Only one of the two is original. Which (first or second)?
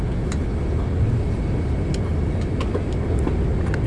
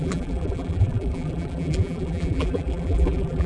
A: first